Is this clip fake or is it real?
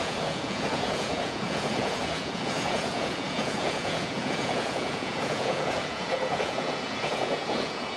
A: fake